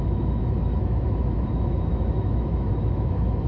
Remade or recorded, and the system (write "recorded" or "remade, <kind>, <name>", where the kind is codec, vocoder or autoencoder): remade, autoencoder, DAC-VAE